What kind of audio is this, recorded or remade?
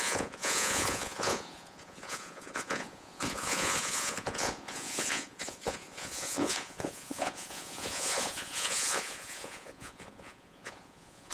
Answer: remade